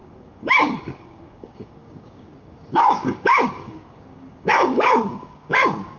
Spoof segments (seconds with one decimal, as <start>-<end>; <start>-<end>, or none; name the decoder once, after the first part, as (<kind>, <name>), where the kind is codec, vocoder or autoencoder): 0.0-6.0 (codec, DAC)